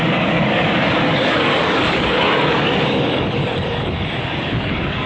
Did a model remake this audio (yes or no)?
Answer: yes